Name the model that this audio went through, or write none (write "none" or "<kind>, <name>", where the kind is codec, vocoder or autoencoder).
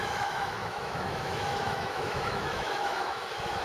autoencoder, DAC-VAE